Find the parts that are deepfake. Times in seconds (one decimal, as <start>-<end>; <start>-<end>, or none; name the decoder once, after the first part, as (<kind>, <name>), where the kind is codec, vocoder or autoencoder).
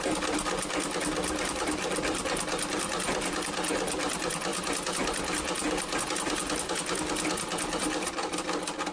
none